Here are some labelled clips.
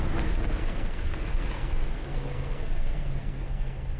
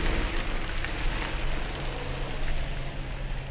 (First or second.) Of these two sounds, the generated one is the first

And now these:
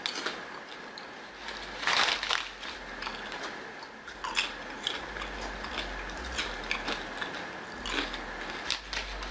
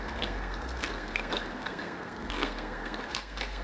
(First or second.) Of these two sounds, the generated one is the second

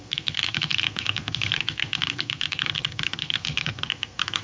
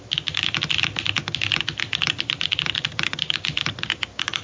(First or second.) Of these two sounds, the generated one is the first